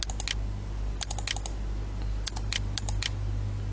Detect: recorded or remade recorded